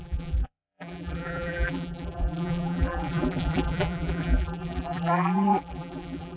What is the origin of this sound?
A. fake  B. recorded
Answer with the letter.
A